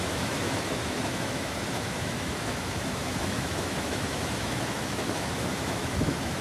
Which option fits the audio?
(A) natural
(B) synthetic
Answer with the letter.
B